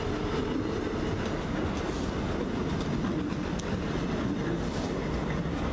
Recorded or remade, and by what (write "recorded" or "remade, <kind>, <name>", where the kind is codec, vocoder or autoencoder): recorded